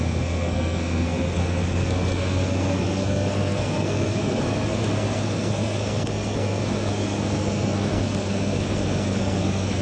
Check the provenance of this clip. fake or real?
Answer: fake